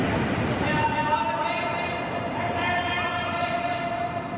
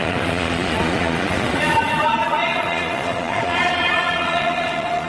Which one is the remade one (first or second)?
second